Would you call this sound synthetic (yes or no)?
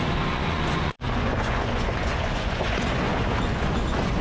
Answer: yes